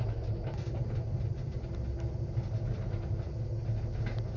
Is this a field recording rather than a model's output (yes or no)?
yes